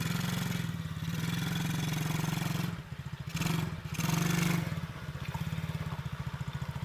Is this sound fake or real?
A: real